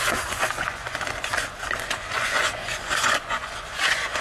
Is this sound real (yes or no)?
no